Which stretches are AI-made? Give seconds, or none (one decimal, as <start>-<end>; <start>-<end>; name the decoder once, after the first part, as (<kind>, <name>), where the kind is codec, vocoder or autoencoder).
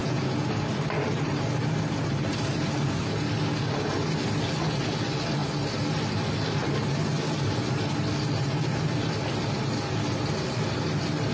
0.0-0.5 (vocoder, Vocos)